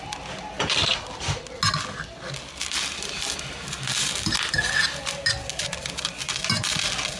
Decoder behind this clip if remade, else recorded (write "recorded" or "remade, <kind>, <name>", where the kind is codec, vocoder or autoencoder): recorded